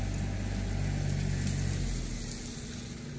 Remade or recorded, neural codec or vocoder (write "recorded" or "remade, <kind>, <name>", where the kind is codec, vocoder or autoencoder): recorded